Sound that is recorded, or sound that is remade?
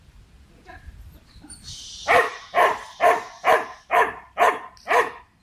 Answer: remade